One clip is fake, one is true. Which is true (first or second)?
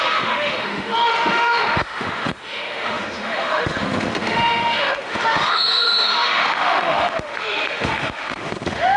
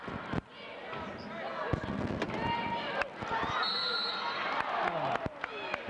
second